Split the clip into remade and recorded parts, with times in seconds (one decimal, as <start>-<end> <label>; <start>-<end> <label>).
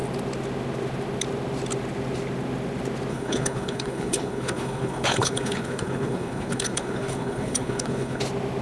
0.0-3.1 recorded; 3.1-8.2 remade; 8.2-8.6 recorded